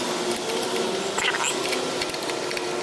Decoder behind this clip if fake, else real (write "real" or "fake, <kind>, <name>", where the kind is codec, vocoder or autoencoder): real